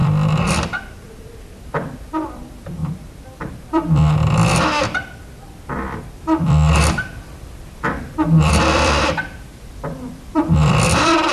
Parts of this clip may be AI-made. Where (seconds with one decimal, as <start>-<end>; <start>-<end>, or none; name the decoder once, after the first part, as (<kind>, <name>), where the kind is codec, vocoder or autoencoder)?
0.0-4.0 (vocoder, BigVGAN v2); 6.4-11.3